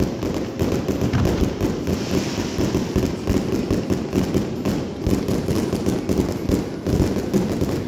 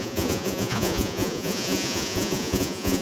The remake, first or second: second